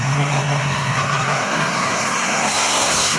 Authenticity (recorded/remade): remade